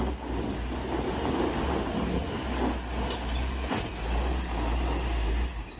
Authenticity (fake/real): real